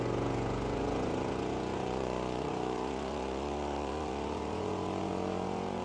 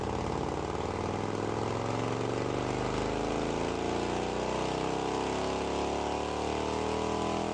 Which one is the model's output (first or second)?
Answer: first